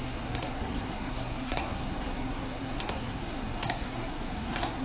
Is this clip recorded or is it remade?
remade